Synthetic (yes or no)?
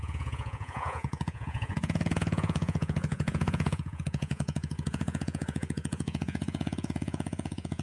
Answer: yes